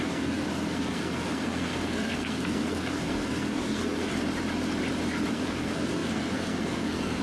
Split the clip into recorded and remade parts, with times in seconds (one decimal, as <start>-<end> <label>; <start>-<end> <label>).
0.0-4.1 remade; 4.1-5.3 recorded; 5.3-7.2 remade